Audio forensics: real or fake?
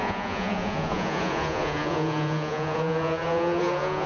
fake